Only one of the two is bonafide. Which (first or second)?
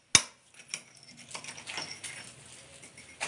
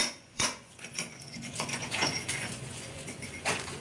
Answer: first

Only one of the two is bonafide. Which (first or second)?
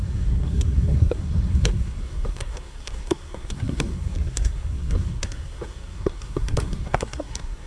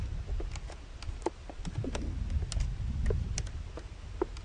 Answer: second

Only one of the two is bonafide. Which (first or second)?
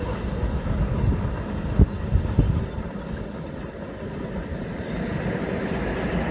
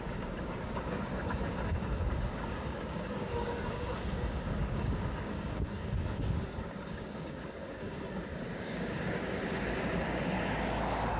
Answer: first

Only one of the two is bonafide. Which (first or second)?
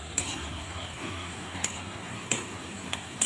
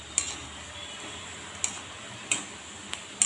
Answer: second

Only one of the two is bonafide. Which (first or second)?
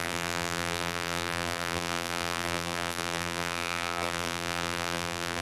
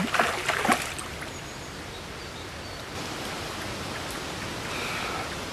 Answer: second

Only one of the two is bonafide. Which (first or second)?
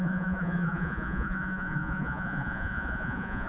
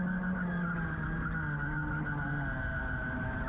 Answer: second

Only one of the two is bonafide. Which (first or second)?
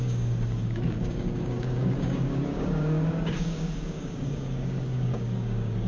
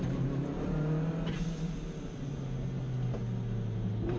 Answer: second